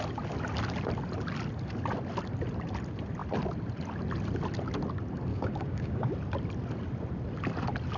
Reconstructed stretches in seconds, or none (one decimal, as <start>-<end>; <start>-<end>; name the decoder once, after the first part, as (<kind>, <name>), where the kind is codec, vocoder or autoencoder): 5.3-6.1 (codec, DAC)